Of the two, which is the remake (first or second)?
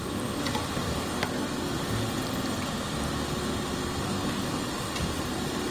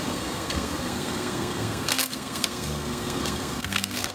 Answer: second